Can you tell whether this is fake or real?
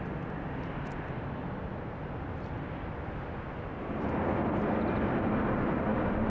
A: real